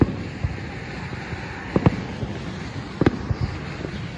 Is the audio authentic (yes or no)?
yes